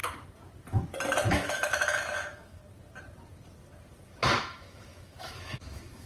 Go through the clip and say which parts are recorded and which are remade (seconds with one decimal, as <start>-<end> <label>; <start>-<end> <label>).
0.0-1.3 recorded; 1.3-2.6 remade; 2.6-4.4 recorded; 4.4-6.1 remade